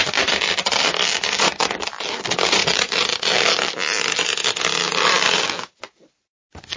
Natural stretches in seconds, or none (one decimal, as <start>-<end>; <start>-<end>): 0.0-6.8